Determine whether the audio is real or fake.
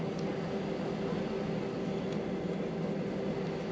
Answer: real